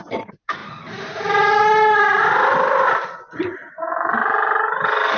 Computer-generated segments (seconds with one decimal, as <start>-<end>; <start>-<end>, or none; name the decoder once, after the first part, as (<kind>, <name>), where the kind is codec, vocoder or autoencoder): 0.6-3.7 (vocoder, BigVGAN v2); 4.2-5.2